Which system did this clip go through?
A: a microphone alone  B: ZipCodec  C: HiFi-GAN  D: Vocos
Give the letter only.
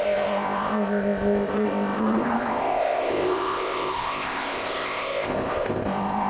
B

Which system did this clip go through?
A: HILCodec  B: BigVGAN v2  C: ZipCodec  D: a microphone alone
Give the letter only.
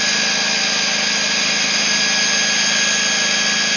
D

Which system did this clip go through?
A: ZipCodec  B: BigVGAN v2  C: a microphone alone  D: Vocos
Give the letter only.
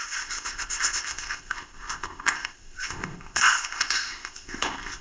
A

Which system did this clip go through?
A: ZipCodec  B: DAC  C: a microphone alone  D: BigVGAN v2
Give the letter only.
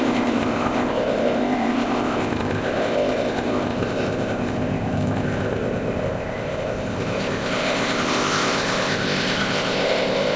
A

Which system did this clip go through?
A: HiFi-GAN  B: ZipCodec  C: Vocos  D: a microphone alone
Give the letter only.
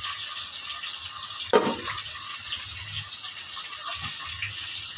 D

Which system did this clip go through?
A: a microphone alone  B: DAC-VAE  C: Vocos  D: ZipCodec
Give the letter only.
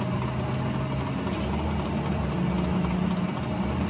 A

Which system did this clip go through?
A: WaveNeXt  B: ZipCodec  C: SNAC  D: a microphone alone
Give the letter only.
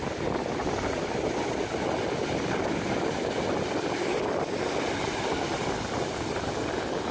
D